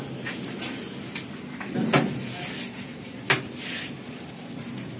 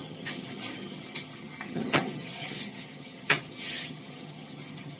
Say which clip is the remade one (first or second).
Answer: second